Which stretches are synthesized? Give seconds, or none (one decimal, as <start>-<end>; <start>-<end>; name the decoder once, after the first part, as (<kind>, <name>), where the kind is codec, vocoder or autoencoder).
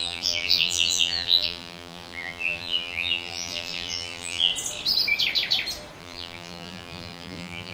0.0-4.5 (vocoder, BigVGAN v2); 6.0-7.7